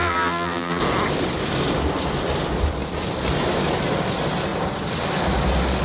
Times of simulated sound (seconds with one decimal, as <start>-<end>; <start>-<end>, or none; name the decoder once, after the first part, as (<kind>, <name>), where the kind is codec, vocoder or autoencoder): 0.0-0.8 (vocoder, BigVGAN v2)